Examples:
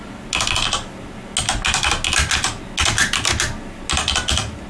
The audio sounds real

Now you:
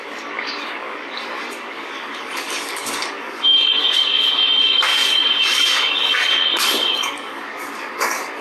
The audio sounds fake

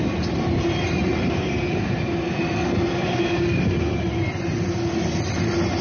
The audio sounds real